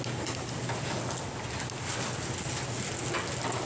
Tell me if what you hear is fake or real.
real